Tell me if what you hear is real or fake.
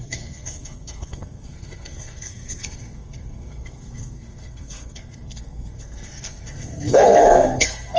fake